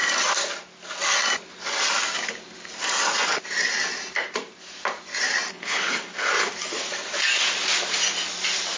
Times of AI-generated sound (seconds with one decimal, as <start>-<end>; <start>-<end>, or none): 5.5-6.3